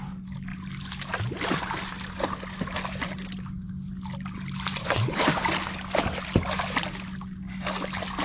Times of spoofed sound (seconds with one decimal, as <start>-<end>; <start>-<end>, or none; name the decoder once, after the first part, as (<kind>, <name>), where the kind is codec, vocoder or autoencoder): 4.8-5.3 (vocoder, WaveNeXt)